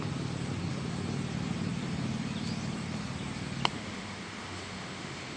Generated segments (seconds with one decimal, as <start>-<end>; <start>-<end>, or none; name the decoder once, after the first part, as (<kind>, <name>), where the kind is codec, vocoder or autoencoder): 3.7-5.4 (autoencoder, DAC-VAE)